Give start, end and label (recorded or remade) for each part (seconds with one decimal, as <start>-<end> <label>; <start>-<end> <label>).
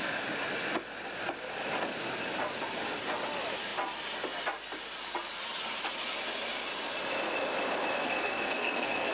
0.0-8.0 recorded; 8.0-9.1 remade